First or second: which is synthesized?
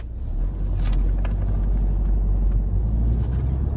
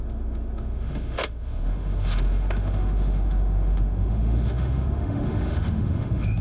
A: second